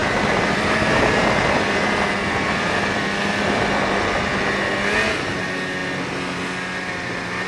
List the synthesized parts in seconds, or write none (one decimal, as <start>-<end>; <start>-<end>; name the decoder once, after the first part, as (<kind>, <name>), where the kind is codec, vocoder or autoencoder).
0.0-4.5 (vocoder, BigVGAN v2)